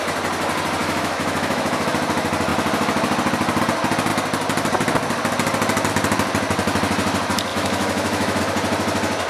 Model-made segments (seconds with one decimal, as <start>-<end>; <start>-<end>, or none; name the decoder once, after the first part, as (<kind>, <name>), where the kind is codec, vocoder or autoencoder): 0.8-1.9 (autoencoder, DAC-VAE); 7.5-8.4